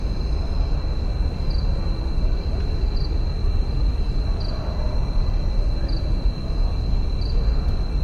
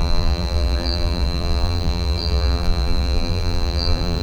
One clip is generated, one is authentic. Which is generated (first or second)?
second